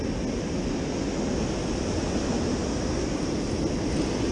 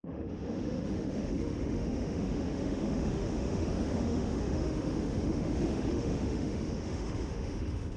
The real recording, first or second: first